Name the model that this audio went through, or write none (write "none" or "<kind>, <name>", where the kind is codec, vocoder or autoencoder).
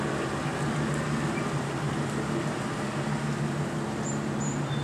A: none